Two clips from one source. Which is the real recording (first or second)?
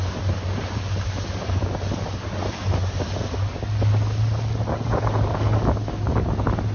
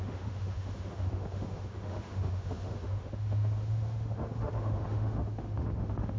first